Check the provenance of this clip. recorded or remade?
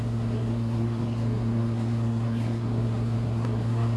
remade